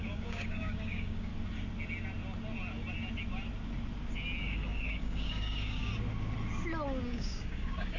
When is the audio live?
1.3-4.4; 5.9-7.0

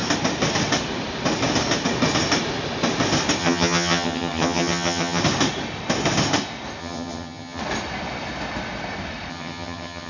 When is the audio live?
0.0-3.4; 5.2-6.8; 7.6-9.3

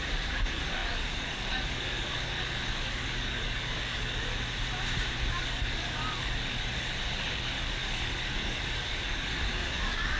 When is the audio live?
4.3-5.4

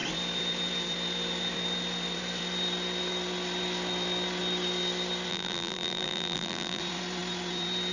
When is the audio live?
0.0-5.3; 6.8-7.9

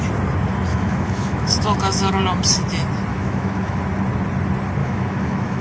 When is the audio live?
0.0-0.7; 2.2-3.1; 3.8-4.8

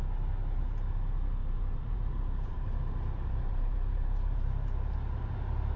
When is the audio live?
0.0-1.4; 4.9-5.8